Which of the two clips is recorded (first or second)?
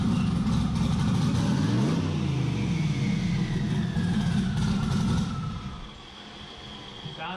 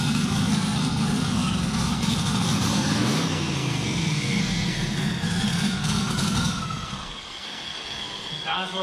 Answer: first